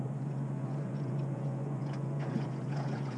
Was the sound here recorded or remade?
remade